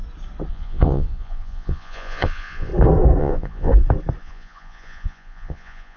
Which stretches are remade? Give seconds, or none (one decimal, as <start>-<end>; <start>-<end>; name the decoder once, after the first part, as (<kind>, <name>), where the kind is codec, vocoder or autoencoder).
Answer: 0.5-2.7 (vocoder, Vocos); 3.2-3.7; 4.2-6.0